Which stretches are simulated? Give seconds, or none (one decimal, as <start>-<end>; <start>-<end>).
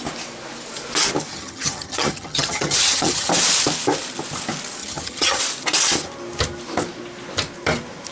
1.3-3.3; 4.8-5.4